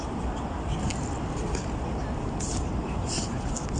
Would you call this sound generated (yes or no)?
no